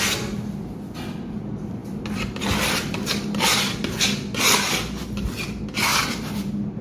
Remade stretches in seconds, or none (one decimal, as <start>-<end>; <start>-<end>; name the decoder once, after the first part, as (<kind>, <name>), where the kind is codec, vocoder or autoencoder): 1.8-3.6 (vocoder, BigVGAN v2); 5.9-6.8